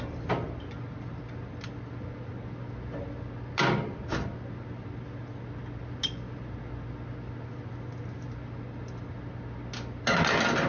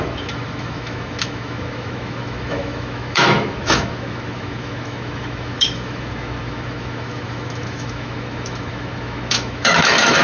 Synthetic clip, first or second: second